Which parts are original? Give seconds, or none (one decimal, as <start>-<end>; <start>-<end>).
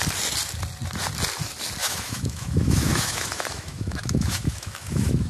0.0-1.8